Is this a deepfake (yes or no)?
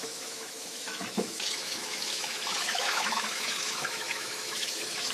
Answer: yes